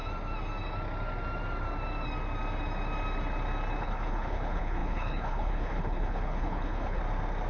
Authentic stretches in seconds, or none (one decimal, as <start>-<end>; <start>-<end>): 0.0-3.8; 7.0-7.5